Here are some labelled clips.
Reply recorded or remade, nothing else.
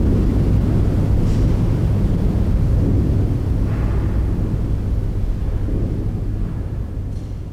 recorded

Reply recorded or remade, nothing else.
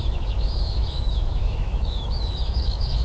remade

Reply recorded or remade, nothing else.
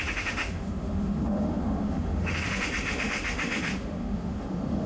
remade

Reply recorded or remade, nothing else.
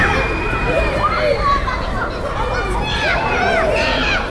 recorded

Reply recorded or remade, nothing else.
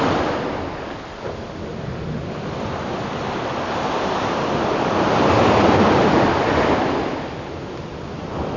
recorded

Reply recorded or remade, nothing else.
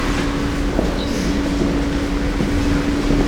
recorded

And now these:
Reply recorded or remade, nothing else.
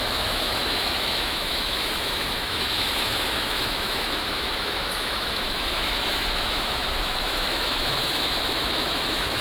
remade